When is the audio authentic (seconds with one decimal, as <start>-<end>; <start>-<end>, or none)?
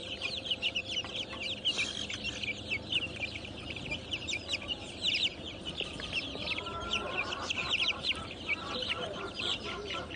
1.4-3.3